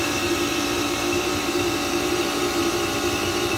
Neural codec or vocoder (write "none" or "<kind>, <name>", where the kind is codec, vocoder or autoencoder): vocoder, BigVGAN v2